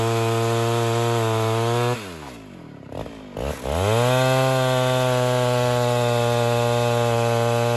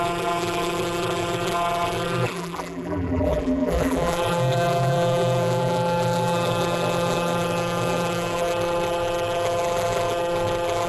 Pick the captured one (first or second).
first